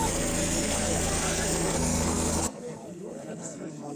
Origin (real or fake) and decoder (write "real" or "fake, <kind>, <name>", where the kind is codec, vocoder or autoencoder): fake, codec, SNAC